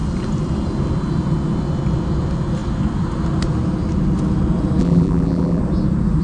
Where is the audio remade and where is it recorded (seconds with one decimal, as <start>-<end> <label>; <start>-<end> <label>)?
0.0-4.8 recorded; 4.8-5.6 remade; 5.6-6.2 recorded